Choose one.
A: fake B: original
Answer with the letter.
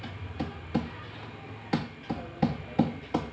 B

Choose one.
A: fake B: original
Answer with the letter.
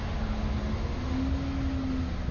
B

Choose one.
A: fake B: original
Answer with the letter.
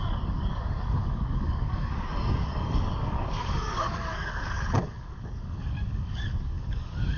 A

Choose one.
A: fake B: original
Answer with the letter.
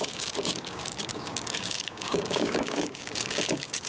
A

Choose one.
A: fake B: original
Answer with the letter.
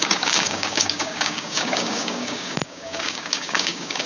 A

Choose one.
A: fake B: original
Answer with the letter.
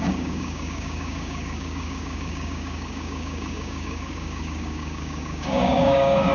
A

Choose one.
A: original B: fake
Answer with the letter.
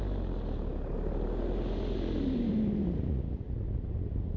A